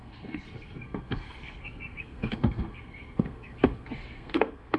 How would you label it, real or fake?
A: fake